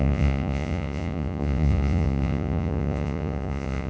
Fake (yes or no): yes